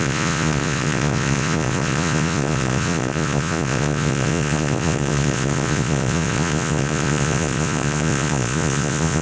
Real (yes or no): no